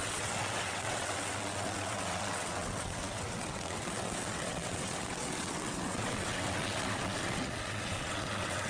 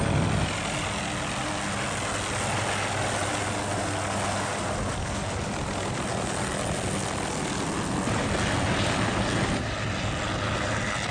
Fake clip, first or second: first